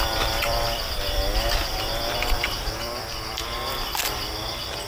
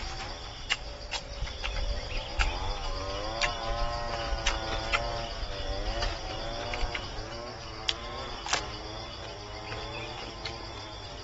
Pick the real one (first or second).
second